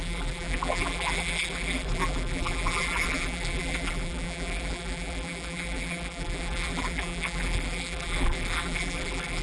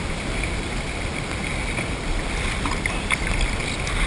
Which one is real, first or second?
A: second